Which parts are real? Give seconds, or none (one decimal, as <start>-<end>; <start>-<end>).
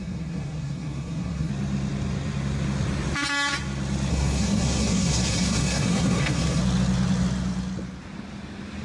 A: 1.5-4.1; 6.6-8.8